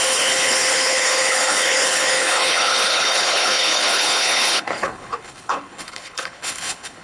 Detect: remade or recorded remade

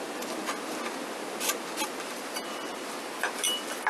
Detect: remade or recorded recorded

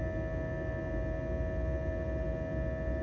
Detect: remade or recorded recorded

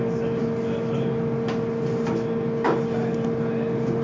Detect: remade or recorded recorded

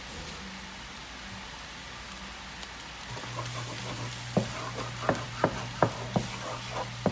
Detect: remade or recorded recorded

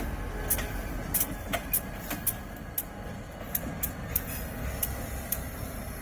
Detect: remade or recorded recorded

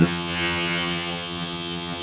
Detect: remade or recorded remade